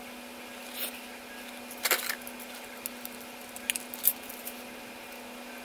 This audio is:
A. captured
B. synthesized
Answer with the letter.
A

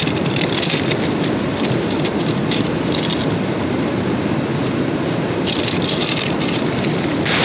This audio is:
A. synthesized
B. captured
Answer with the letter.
A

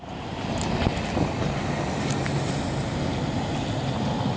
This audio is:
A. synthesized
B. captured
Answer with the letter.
B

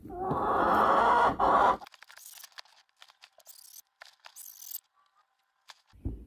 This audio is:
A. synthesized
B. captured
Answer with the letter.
B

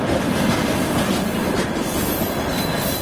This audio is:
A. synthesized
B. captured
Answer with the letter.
B